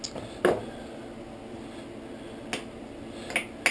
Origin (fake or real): real